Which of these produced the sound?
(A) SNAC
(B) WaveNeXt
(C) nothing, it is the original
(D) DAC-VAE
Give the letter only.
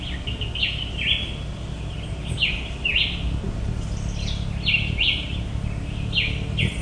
C